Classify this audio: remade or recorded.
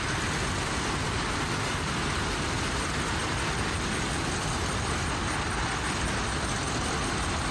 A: recorded